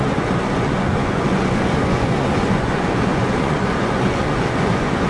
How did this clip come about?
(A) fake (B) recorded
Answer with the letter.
A